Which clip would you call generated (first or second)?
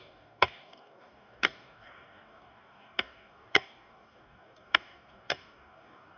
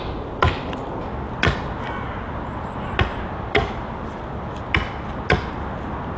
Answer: first